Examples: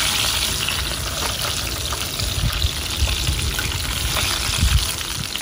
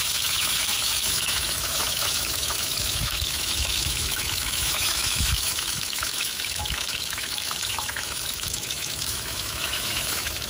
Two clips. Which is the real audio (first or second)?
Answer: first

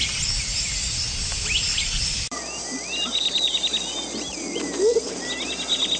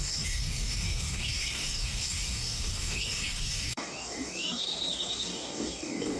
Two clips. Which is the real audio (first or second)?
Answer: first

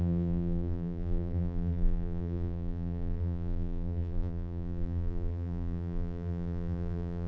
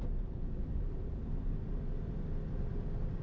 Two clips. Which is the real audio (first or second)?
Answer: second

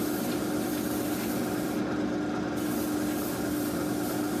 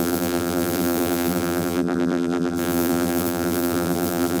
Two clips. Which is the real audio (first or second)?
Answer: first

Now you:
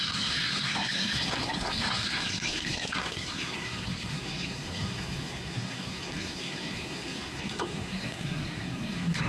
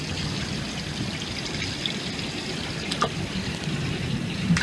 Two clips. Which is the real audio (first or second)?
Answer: second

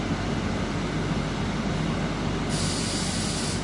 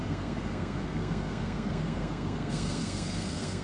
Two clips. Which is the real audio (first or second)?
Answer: first